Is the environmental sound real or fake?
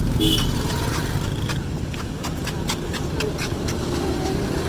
real